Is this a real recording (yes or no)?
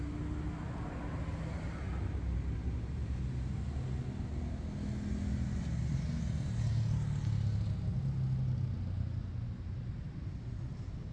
yes